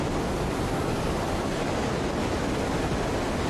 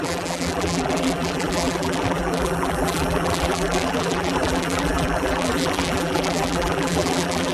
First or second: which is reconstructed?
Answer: second